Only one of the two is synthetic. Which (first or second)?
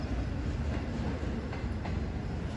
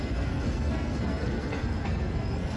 second